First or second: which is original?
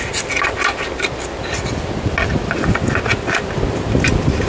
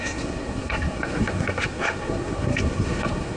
first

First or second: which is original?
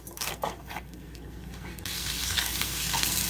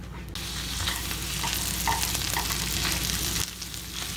second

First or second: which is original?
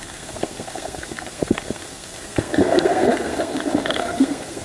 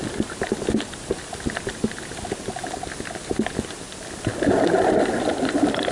second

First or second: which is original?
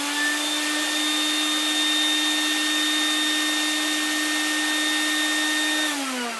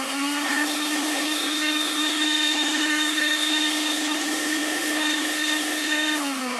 first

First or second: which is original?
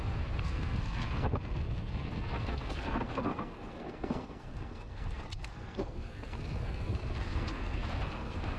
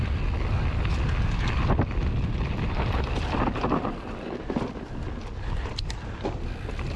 second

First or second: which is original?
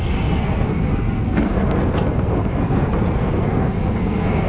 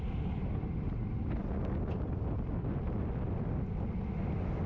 second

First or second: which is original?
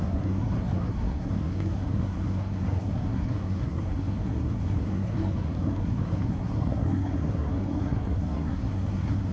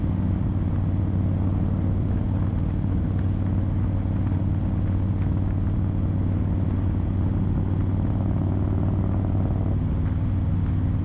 second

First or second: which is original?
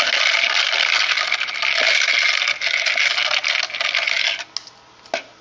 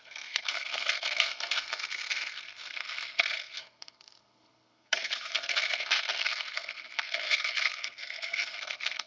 first